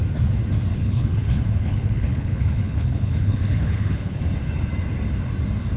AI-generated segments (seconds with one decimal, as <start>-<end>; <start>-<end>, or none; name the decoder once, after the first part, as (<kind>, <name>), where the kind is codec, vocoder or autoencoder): 0.7-4.2 (codec, HILCodec)